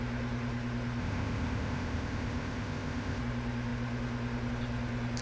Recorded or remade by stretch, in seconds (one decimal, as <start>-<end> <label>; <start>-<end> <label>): 0.0-1.0 recorded; 1.0-3.2 remade; 3.2-5.2 recorded